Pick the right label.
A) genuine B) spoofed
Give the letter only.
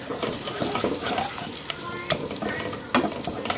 A